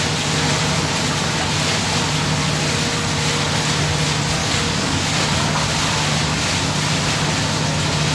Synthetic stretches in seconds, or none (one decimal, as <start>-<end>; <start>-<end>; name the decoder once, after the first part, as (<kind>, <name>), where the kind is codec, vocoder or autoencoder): 4.4-5.0 (codec, DAC)